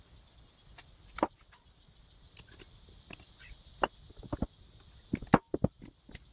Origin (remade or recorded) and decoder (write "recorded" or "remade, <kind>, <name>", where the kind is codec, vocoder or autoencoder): recorded